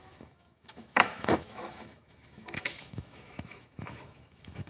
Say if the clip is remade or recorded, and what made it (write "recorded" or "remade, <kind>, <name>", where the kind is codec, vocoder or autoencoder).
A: remade, autoencoder, DAC-VAE